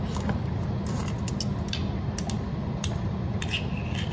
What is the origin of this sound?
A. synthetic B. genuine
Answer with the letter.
B